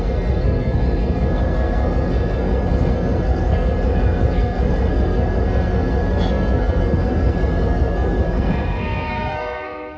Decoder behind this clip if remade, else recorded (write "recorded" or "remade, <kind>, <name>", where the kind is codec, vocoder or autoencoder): remade, codec, SNAC